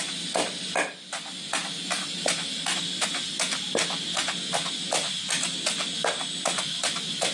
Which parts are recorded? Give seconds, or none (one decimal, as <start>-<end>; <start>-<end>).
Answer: 0.0-7.3

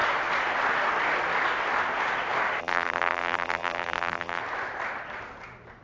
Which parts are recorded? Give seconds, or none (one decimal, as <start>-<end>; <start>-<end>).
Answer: 0.0-2.6; 4.4-5.8

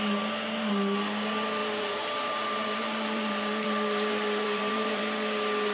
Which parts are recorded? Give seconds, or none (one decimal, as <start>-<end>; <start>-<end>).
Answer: 0.0-1.6; 5.0-5.7

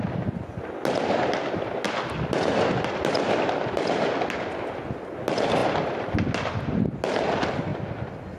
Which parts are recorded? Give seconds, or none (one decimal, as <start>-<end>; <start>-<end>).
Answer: 0.0-8.4

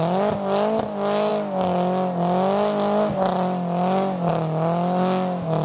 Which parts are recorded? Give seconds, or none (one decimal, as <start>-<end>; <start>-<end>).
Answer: 0.0-5.6